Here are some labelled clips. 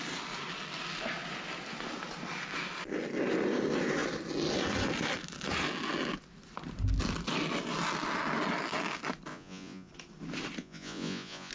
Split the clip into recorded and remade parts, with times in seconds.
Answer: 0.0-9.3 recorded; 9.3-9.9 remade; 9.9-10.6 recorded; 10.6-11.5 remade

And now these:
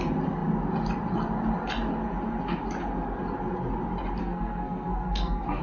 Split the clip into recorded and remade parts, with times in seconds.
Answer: 0.0-4.2 recorded; 4.2-5.6 remade

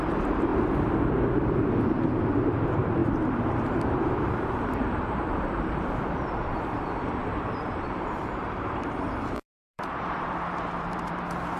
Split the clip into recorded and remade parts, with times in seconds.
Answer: 0.0-0.5 remade; 0.5-1.9 recorded; 1.9-11.6 remade

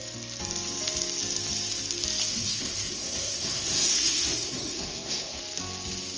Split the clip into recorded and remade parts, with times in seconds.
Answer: 0.0-2.3 recorded; 2.3-5.4 remade; 5.4-6.2 recorded

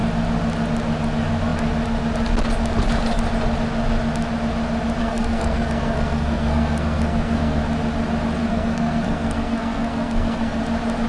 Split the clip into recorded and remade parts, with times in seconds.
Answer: 0.0-5.0 recorded; 5.0-7.6 remade; 7.6-8.4 recorded; 8.4-10.6 remade; 10.6-11.1 recorded

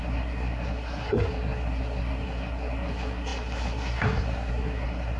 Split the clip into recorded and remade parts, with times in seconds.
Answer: 0.0-5.2 remade